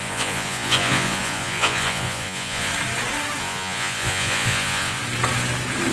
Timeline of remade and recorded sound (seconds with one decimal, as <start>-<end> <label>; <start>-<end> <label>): 0.0-2.7 remade; 2.7-3.4 recorded; 3.4-5.0 remade; 5.0-5.9 recorded